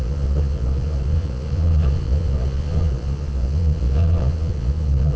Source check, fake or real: fake